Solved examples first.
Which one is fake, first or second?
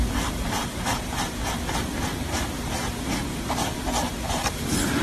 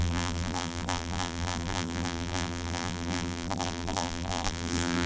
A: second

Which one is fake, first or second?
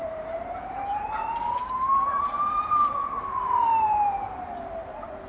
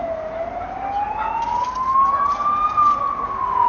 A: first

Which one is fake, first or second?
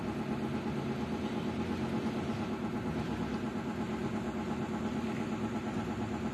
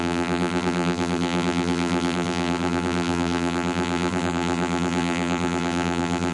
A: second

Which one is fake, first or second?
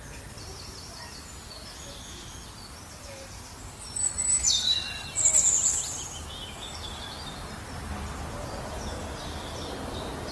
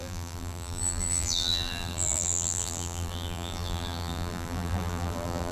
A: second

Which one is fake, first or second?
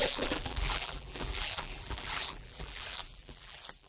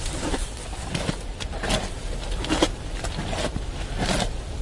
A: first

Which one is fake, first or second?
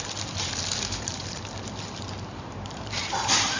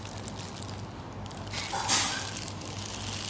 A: first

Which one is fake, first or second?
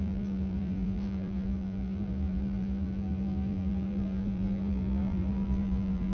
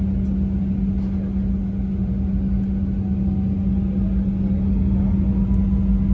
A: first